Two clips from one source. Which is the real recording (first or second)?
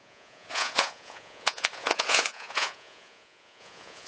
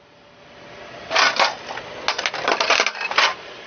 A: second